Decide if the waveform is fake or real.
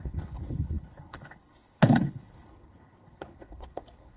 fake